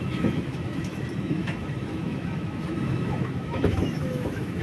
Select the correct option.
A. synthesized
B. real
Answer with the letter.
A